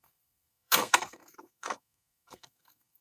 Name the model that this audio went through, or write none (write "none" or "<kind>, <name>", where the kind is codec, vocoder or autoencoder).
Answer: codec, SNAC